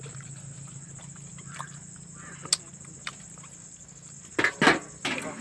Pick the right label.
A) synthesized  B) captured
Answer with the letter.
B